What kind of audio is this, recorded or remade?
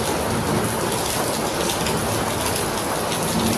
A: recorded